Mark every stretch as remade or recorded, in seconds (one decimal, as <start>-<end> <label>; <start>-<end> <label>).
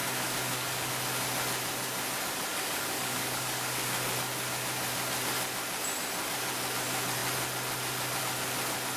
0.0-0.9 remade; 0.9-2.5 recorded; 2.5-4.1 remade; 4.1-9.0 recorded